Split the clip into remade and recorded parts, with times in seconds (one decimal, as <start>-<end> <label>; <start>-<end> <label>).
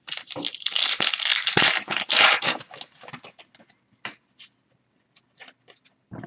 0.0-6.3 recorded